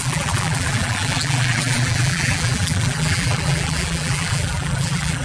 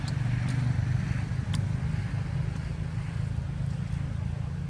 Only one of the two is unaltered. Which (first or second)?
second